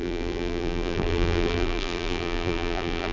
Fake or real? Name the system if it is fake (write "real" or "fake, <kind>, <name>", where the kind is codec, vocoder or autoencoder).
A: fake, vocoder, BigVGAN v2